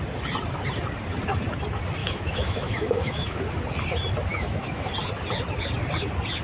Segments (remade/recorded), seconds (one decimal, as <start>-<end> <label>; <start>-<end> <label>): 0.0-2.0 recorded; 2.0-3.4 remade; 3.4-4.3 recorded; 4.3-4.9 remade; 4.9-6.4 recorded